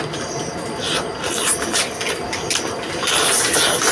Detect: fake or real real